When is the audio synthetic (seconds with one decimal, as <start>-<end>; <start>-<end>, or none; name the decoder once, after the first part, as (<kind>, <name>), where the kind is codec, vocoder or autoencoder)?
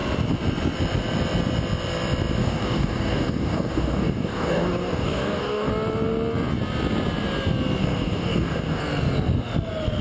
2.4-5.7 (codec, DAC); 7.8-8.8